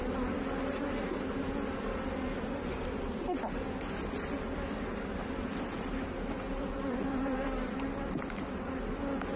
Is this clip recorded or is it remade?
recorded